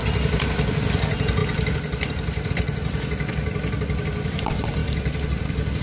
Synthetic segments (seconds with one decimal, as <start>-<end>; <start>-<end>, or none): none